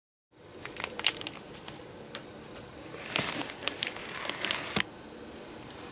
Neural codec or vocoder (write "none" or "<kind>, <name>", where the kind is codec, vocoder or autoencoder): none